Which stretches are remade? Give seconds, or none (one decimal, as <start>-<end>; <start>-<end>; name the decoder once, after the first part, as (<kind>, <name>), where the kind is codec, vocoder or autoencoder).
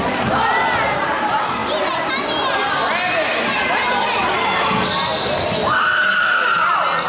none